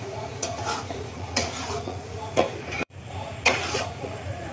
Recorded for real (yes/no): no